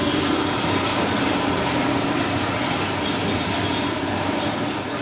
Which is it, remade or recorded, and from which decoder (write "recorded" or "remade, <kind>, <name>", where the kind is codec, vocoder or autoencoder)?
remade, vocoder, BigVGAN v2